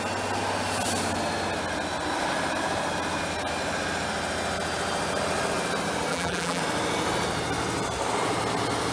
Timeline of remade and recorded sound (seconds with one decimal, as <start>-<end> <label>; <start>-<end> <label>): 0.0-6.1 recorded; 6.1-6.6 remade; 6.6-8.9 recorded